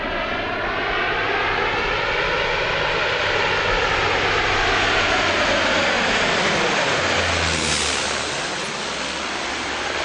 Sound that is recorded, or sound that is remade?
recorded